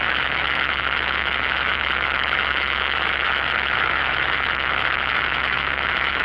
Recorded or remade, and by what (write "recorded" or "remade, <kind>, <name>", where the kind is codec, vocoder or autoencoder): remade, autoencoder, DAC-VAE